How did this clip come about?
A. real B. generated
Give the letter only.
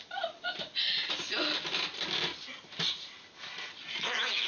A